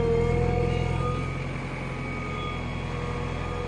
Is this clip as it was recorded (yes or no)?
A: yes